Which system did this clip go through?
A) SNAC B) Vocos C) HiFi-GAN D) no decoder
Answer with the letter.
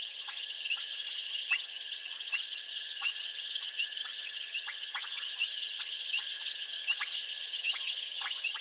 C